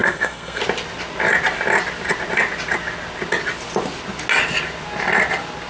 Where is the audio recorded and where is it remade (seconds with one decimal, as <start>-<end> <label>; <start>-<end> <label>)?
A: 0.0-0.6 remade; 0.6-5.7 recorded